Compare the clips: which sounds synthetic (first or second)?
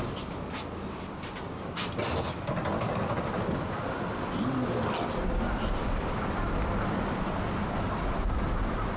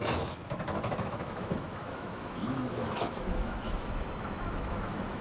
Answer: second